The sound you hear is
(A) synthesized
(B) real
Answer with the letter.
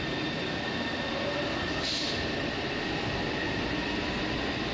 B